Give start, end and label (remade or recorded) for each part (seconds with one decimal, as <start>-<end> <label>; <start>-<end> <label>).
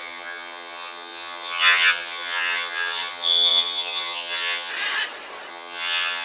0.0-4.7 remade; 4.7-5.5 recorded; 5.5-6.2 remade